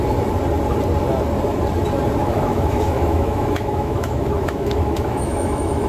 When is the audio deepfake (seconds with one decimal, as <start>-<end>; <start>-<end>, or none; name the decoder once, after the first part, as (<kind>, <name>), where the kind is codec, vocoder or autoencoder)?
2.2-5.9 (autoencoder, DAC-VAE)